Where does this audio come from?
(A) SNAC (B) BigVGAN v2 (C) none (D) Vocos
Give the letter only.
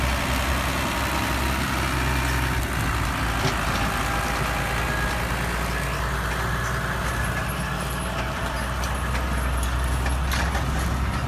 C